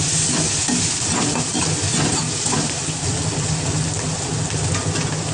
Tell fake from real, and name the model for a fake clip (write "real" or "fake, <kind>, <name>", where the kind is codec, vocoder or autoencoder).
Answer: real